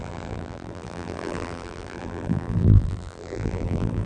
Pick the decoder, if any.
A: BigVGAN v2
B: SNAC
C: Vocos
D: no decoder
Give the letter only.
A